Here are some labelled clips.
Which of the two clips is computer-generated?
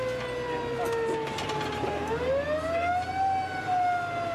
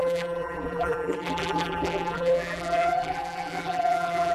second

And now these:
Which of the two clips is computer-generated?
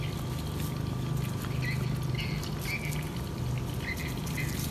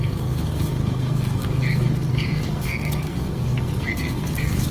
second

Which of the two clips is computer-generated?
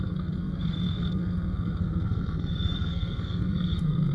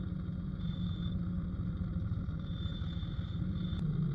first